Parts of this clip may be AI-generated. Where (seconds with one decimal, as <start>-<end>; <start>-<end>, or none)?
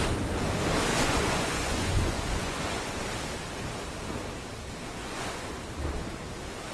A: 0.9-3.0; 5.0-5.6